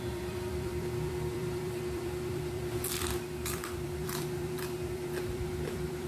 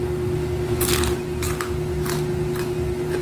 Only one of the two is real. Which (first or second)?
second